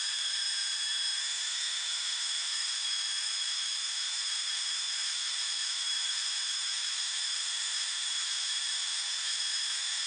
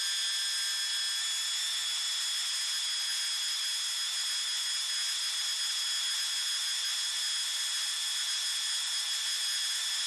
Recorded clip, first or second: second